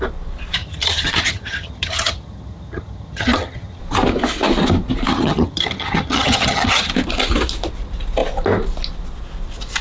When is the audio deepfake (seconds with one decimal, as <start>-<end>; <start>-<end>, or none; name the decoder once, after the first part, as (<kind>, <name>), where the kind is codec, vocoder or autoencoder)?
0.6-3.8 (vocoder, HiFi-GAN); 5.1-6.9